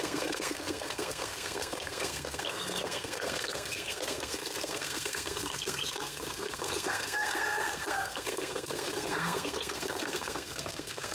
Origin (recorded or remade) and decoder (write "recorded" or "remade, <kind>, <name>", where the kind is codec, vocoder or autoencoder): remade, codec, SNAC